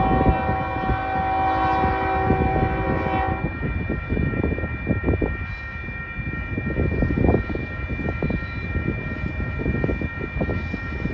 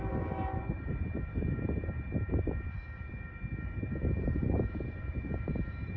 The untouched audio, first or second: first